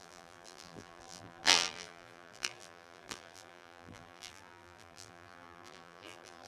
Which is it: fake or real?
fake